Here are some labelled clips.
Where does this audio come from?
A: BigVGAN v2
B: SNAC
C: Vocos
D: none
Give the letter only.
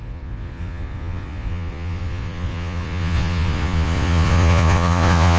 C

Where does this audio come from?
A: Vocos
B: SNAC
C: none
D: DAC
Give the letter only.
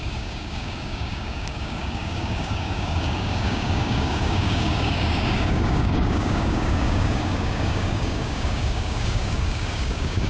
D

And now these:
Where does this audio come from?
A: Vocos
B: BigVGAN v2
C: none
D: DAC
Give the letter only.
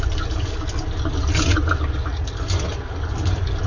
C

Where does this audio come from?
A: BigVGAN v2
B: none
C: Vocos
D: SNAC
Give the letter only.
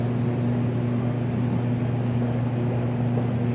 B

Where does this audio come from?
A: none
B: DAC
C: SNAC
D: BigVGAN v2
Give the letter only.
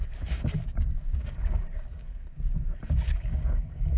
B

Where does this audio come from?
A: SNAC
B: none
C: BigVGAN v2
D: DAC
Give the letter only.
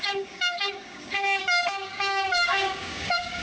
D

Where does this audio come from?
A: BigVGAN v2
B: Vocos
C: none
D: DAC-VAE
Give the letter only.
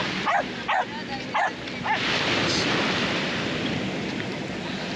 C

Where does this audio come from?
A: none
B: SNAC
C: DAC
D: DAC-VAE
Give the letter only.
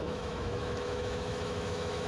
D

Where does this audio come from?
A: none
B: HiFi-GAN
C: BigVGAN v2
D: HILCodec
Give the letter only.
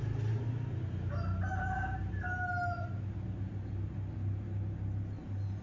A